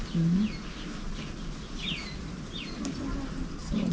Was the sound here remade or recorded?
recorded